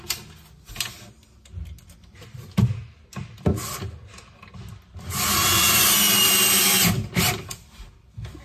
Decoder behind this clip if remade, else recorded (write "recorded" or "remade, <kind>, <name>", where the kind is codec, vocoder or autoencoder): recorded